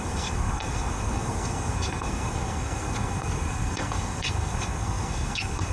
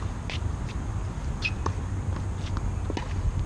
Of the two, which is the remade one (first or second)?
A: first